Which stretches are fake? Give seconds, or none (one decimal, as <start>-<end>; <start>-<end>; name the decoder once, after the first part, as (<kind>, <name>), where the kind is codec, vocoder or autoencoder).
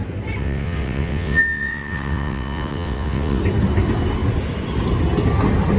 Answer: 0.4-3.4 (vocoder, WaveNeXt)